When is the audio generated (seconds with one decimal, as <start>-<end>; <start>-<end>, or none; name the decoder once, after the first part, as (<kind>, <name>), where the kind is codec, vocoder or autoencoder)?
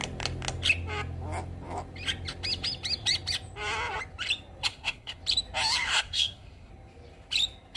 4.7-5.2 (codec, SNAC); 5.9-6.7